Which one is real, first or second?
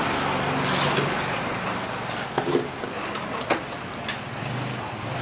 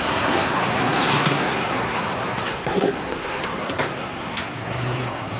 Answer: first